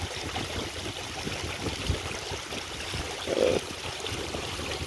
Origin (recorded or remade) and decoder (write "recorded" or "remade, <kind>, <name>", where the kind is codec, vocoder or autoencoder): remade, vocoder, BigVGAN v2